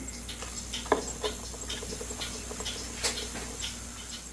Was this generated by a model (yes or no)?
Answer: no